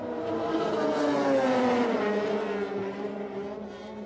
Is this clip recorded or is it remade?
recorded